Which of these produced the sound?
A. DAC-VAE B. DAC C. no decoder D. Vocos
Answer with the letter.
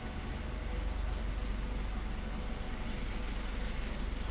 C